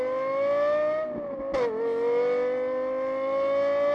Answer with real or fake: real